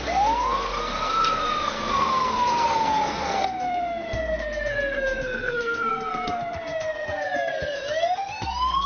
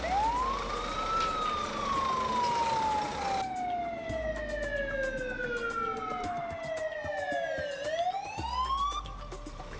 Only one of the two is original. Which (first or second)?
second